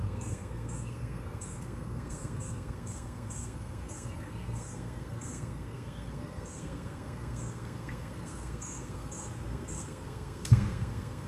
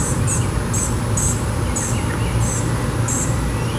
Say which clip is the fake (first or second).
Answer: first